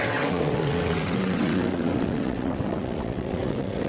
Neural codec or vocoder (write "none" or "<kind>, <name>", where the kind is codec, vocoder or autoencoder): vocoder, WaveNeXt